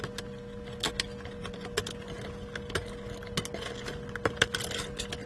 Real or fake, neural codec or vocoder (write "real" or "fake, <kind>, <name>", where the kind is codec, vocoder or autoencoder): real